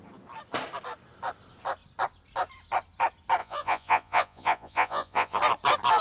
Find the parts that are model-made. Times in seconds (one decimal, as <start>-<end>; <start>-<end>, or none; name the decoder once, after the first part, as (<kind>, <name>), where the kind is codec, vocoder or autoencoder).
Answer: 3.4-5.4 (vocoder, Vocos)

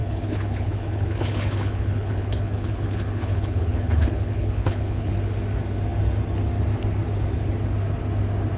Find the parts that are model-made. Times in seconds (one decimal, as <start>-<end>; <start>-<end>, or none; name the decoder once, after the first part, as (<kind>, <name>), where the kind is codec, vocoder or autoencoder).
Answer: 0.0-5.1 (codec, HILCodec)